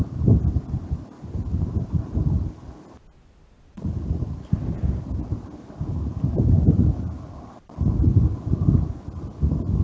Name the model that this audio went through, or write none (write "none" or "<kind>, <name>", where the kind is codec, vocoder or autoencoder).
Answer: none